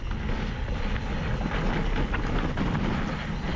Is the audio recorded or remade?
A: recorded